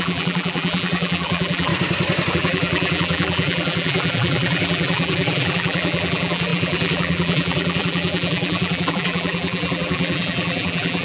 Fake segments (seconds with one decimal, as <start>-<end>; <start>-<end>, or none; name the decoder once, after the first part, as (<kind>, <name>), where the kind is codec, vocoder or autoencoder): 0.0-1.7 (vocoder, BigVGAN v2); 2.3-11.0